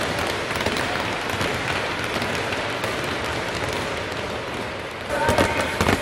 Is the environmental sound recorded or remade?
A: remade